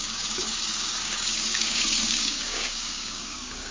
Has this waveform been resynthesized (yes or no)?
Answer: yes